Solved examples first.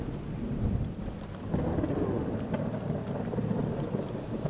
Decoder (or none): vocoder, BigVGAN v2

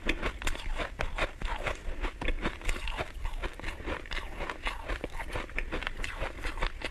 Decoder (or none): none